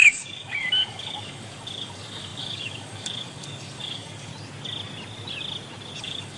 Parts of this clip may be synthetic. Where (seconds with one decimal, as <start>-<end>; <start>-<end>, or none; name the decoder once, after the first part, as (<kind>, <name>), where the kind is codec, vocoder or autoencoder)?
0.0-4.3 (codec, DAC); 6.0-6.4